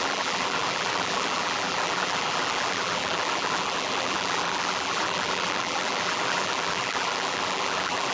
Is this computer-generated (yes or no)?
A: yes